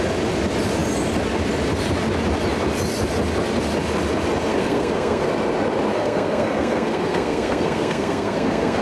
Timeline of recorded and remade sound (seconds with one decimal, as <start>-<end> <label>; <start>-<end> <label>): 0.0-4.5 recorded; 4.5-5.3 remade; 5.3-5.9 recorded; 5.9-8.8 remade